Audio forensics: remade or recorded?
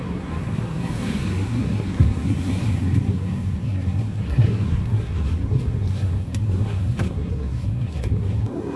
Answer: remade